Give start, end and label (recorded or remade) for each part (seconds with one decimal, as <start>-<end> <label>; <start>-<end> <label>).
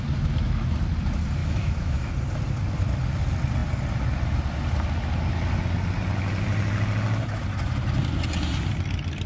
0.0-1.4 recorded; 1.4-2.1 remade; 2.1-9.3 recorded